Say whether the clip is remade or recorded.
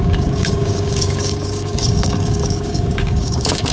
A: remade